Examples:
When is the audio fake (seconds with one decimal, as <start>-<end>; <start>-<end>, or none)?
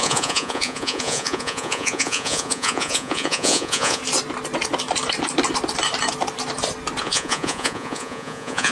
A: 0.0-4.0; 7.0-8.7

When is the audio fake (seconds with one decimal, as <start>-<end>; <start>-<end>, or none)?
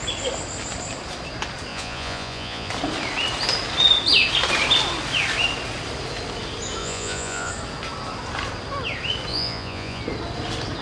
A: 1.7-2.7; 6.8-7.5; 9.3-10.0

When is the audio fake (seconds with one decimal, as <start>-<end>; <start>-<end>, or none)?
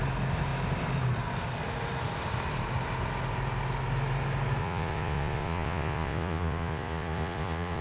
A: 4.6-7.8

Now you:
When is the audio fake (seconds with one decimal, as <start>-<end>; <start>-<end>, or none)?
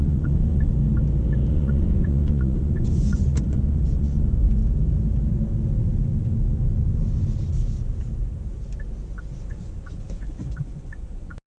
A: 0.0-0.7; 1.5-4.6; 9.5-11.6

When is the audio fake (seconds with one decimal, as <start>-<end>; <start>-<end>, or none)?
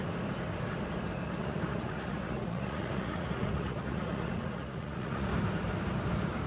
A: 1.4-5.3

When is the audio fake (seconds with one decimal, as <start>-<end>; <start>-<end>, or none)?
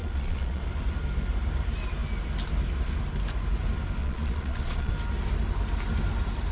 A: 0.0-0.6; 4.0-4.9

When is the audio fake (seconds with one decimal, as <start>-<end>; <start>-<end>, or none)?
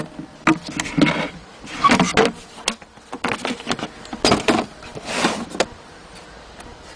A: none